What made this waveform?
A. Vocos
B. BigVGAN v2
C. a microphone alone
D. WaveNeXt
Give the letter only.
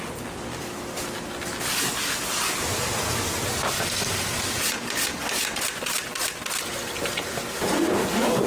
C